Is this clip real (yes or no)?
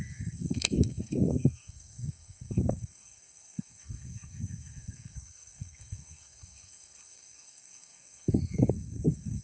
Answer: no